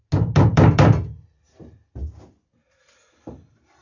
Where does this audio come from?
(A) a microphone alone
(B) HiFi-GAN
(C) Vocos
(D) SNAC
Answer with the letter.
A